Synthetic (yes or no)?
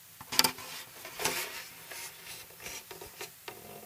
no